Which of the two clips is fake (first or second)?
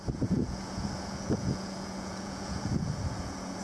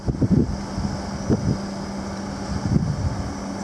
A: first